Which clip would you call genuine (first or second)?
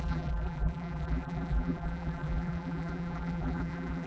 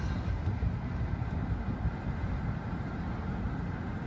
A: second